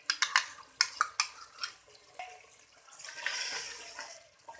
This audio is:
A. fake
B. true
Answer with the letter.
B